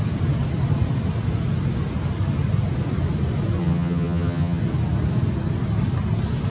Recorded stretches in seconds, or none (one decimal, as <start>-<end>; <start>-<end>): 0.0-3.6; 4.6-6.5